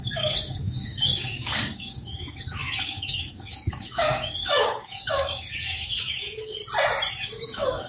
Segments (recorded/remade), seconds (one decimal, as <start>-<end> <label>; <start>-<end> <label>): 0.0-6.6 remade; 6.6-7.1 recorded; 7.1-7.9 remade